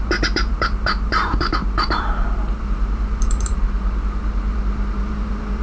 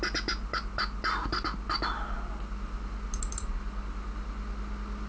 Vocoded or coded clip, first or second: first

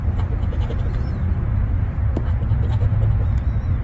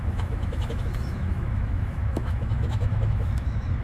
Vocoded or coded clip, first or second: second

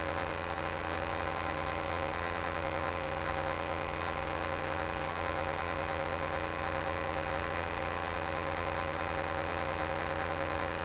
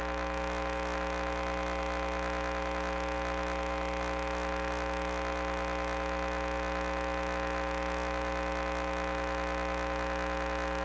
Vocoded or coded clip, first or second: first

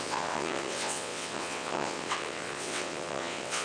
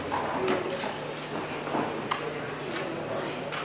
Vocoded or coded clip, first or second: first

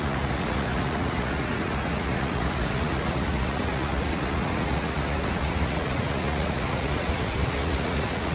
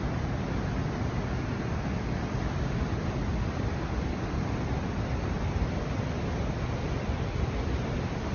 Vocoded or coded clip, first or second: first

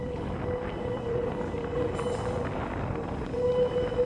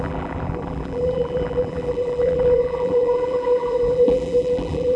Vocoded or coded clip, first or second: second